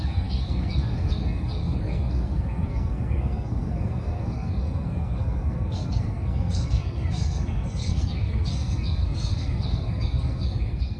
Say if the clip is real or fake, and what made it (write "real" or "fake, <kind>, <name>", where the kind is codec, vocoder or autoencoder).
fake, codec, SNAC